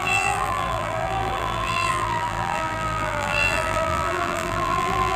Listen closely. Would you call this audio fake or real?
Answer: fake